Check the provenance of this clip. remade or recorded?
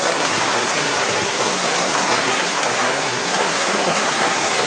remade